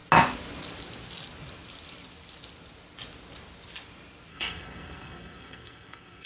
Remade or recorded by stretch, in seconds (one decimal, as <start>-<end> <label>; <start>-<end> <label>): 0.0-4.3 recorded; 4.3-6.3 remade